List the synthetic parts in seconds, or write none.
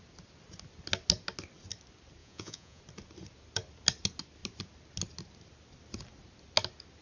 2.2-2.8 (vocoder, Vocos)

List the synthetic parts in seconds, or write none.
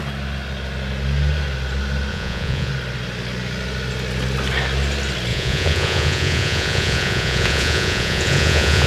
2.1-2.7 (vocoder, Vocos); 5.3-8.9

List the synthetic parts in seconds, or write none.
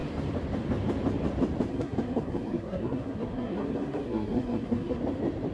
1.7-5.0 (codec, SNAC)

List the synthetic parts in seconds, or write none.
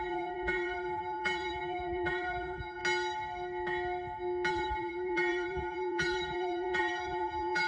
0.0-2.8 (vocoder, BigVGAN v2); 4.5-7.7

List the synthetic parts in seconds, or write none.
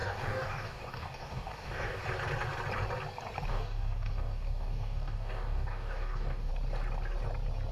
0.0-2.0 (codec, DAC); 3.5-6.5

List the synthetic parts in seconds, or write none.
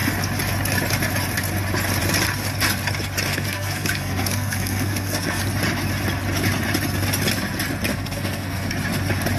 3.3-5.4 (codec, SNAC); 7.9-8.7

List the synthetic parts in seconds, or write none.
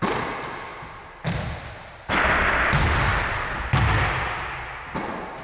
none